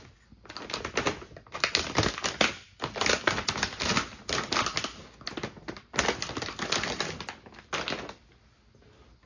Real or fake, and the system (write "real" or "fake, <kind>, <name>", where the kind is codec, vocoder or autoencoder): real